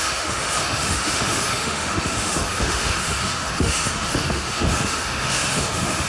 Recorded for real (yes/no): no